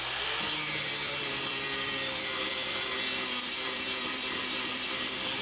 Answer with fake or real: fake